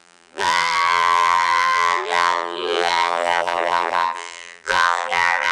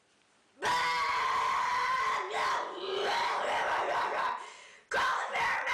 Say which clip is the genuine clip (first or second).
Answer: second